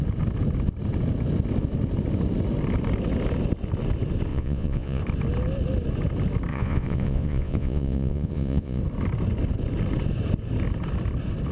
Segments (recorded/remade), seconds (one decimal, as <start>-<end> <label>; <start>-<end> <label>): 0.0-4.3 recorded; 4.3-5.0 remade; 5.0-6.5 recorded; 6.5-8.8 remade; 8.8-11.5 recorded